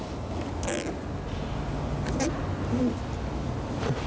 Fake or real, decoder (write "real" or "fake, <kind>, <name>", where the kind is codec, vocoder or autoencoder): real